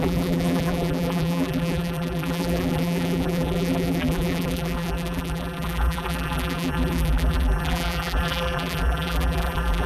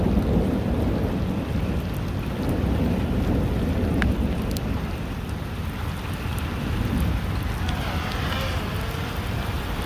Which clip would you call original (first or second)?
second